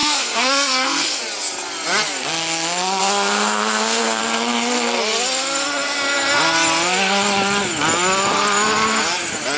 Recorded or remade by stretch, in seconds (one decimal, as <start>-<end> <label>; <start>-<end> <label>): 0.0-1.2 remade; 1.2-3.0 recorded; 3.0-4.2 remade; 4.2-9.6 recorded

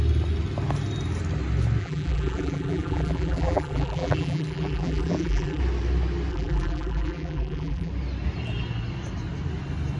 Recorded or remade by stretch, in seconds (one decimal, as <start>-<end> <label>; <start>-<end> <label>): 0.0-1.8 recorded; 1.8-5.6 remade; 5.6-6.3 recorded; 6.3-7.9 remade; 7.9-10.0 recorded